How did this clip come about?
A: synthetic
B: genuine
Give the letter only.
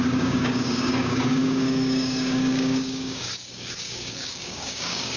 A